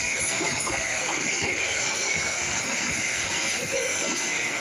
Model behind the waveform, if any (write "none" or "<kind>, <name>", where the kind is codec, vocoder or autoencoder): codec, SNAC